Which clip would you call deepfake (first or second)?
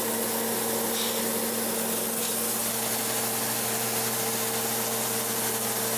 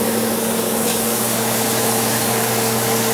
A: second